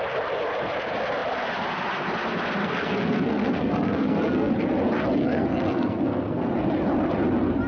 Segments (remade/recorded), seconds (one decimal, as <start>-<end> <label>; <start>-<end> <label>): 0.0-2.6 recorded; 2.6-4.5 remade; 4.5-5.2 recorded; 5.2-6.5 remade; 6.5-7.7 recorded

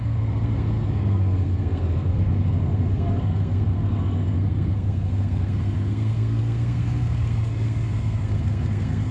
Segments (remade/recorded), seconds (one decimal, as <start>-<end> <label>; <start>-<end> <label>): 0.0-9.1 remade

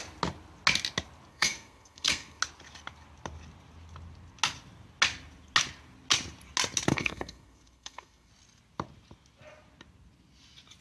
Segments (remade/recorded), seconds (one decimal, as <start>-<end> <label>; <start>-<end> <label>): 0.0-1.3 recorded; 1.3-2.4 remade; 2.4-6.9 recorded; 6.9-8.3 remade; 8.3-10.8 recorded

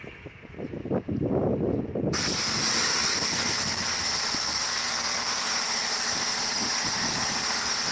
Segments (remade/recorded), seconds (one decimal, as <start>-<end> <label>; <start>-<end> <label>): 0.0-2.9 recorded; 2.9-4.0 remade; 4.0-4.4 recorded; 4.4-5.4 remade; 5.4-7.9 recorded

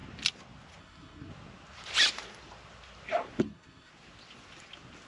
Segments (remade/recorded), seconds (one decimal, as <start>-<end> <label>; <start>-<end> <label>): 0.0-0.8 recorded; 0.8-1.3 remade; 1.3-3.4 recorded; 3.4-3.9 remade; 3.9-5.1 recorded

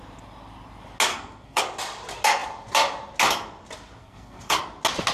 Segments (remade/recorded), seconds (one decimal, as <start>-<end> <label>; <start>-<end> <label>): 0.0-1.1 recorded; 1.1-1.6 remade; 1.6-4.0 recorded; 4.0-4.6 remade; 4.6-5.1 recorded

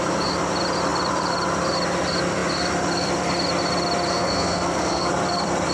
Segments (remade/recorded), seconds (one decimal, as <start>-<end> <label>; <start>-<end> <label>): 0.0-4.1 recorded; 4.1-5.1 remade; 5.1-5.7 recorded